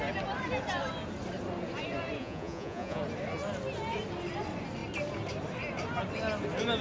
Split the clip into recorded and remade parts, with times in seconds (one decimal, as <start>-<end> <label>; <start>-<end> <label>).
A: 0.0-2.2 recorded; 2.2-3.0 remade; 3.0-6.8 recorded